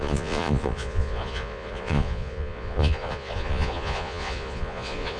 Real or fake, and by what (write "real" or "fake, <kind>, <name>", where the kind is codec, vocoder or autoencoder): fake, vocoder, Vocos